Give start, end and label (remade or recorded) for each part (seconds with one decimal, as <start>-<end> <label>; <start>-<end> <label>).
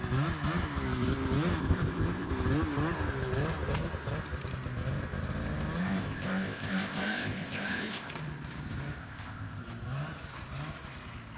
0.0-1.6 recorded; 1.6-2.3 remade; 2.3-5.8 recorded; 5.8-8.1 remade; 8.1-9.0 recorded; 9.0-9.6 remade; 9.6-11.4 recorded